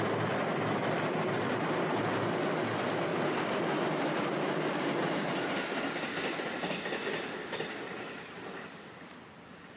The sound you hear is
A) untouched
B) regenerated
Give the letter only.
A